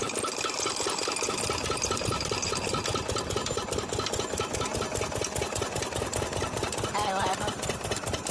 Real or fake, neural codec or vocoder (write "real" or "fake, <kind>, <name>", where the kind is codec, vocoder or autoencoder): real